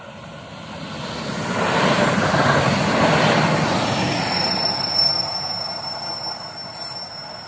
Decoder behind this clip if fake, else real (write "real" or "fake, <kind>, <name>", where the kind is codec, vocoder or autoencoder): real